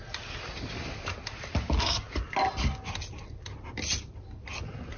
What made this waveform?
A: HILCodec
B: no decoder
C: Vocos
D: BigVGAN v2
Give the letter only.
B